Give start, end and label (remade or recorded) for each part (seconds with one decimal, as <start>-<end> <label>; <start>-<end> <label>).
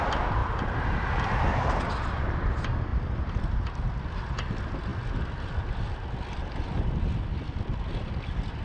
0.0-8.6 recorded